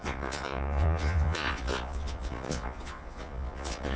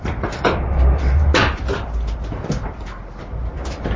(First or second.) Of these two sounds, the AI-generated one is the first